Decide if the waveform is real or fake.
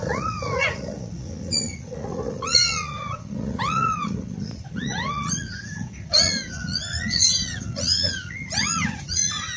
fake